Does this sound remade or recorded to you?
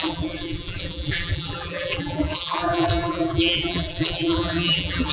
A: remade